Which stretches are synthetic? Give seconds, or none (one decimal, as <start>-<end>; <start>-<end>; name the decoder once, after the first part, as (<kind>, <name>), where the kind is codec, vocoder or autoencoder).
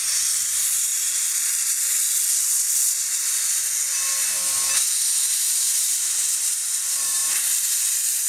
0.0-0.9 (vocoder, BigVGAN v2); 5.4-7.2; 7.9-8.3